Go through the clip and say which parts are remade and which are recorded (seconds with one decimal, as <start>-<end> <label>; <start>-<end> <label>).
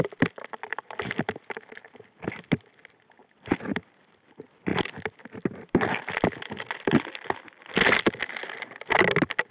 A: 0.0-9.5 recorded